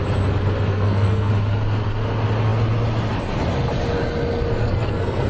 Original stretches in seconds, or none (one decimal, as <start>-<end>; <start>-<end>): 0.0-0.7; 1.3-4.6